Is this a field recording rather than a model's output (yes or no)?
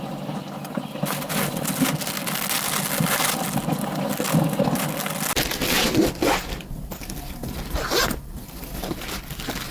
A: yes